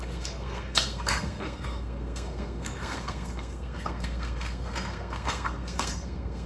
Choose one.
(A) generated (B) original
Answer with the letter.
A